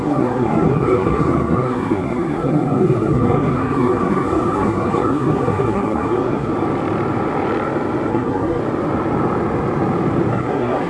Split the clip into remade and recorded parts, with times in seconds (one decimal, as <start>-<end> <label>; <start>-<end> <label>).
0.0-6.5 remade; 6.5-8.1 recorded; 8.1-8.6 remade; 8.6-10.3 recorded; 10.3-10.9 remade